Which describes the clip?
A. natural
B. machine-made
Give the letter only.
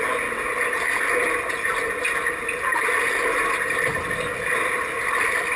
A